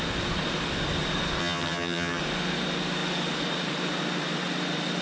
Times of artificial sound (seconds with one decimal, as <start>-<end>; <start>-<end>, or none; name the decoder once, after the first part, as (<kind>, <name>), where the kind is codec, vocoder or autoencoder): 1.4-2.2 (vocoder, HiFi-GAN)